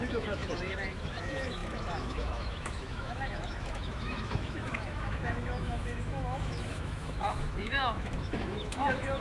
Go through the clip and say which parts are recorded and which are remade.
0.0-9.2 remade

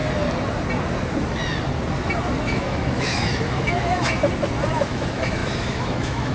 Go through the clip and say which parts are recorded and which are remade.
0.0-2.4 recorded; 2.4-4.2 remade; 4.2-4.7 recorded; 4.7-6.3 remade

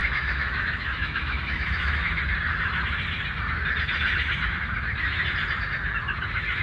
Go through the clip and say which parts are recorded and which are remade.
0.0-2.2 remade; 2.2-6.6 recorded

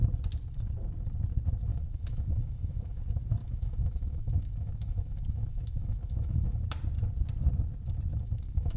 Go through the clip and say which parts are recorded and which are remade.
0.0-1.7 recorded; 1.7-3.0 remade; 3.0-3.4 recorded; 3.4-6.6 remade; 6.6-8.1 recorded; 8.1-8.8 remade

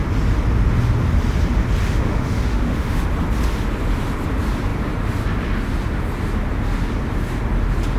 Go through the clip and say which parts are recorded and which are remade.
0.0-1.8 recorded; 1.8-3.0 remade; 3.0-8.0 recorded

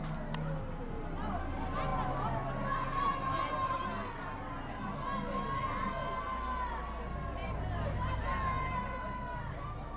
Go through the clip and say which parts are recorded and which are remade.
0.0-10.0 recorded